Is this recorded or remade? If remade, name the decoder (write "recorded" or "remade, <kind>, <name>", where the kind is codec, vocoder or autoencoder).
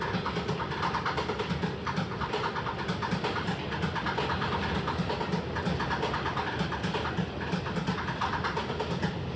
recorded